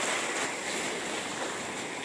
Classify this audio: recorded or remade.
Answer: recorded